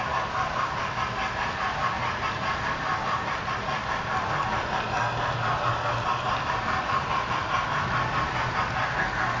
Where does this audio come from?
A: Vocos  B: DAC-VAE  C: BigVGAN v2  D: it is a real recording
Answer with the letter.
D